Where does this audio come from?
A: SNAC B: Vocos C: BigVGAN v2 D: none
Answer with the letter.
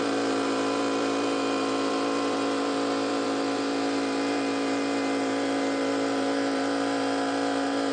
C